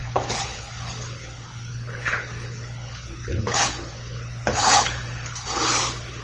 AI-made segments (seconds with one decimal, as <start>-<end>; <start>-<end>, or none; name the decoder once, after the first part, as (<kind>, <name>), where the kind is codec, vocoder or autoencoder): 0.0-6.2 (codec, HILCodec)